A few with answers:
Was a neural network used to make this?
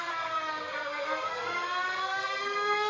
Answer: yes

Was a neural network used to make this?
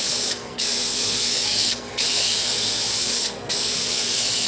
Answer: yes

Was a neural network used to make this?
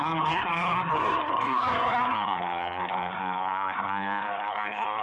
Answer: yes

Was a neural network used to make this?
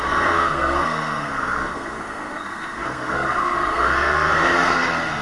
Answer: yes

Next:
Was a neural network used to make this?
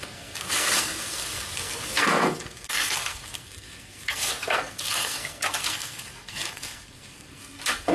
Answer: yes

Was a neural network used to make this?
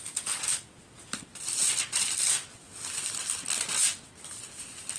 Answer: no